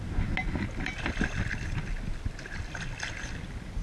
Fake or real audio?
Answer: real